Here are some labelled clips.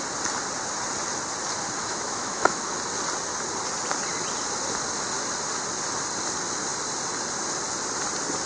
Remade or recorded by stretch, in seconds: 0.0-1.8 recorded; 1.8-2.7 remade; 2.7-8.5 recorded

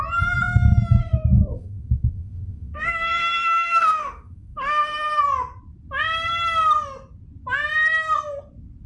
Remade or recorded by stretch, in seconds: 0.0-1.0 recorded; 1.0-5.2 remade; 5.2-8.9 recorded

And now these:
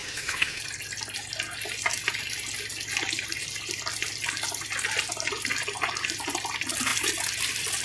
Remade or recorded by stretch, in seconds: 0.0-0.6 remade; 0.6-7.8 recorded

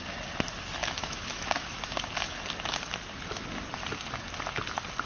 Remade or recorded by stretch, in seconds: 0.0-0.8 recorded; 0.8-1.5 remade; 1.5-5.1 recorded

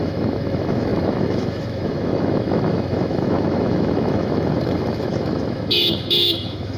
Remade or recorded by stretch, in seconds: 0.0-6.8 remade